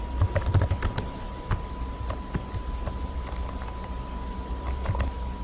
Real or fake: real